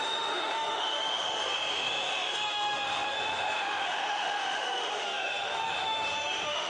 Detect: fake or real fake